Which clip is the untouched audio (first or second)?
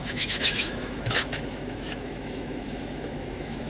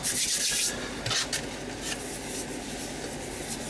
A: second